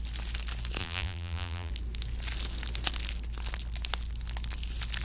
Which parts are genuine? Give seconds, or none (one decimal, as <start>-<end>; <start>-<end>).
0.0-0.8; 1.7-5.0